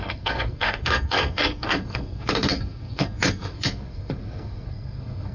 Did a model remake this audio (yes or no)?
yes